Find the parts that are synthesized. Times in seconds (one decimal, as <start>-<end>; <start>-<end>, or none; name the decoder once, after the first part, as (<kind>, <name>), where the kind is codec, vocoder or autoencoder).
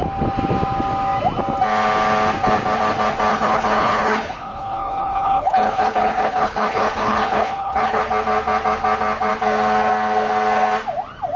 3.3-8.0 (codec, HILCodec)